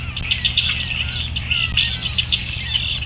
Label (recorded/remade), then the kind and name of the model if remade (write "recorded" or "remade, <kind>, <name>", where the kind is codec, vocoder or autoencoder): recorded